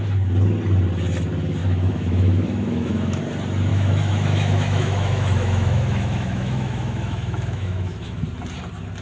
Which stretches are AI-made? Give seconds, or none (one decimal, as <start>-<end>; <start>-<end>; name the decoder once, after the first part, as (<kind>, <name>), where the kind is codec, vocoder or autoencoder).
1.6-3.2 (autoencoder, DAC-VAE); 3.7-8.2